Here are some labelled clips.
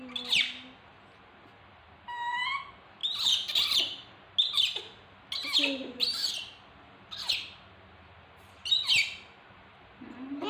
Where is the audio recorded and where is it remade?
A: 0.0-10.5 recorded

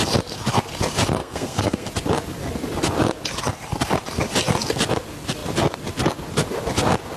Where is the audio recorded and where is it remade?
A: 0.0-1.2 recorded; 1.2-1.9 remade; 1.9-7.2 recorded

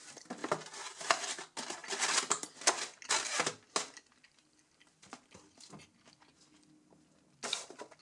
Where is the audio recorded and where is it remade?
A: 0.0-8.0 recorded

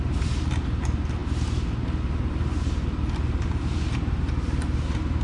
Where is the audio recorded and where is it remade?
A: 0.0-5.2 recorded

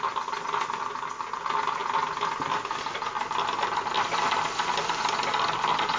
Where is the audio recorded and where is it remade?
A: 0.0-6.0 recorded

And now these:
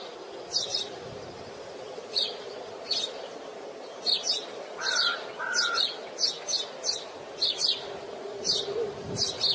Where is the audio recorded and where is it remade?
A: 0.0-3.5 remade; 3.5-8.0 recorded; 8.0-9.5 remade